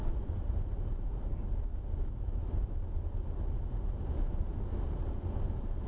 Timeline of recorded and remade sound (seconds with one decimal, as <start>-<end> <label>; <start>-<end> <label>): 0.0-1.3 remade; 1.3-3.6 recorded; 3.6-4.5 remade; 4.5-5.9 recorded